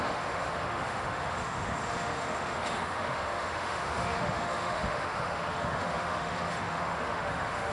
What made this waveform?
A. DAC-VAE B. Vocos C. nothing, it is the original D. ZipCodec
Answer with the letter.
A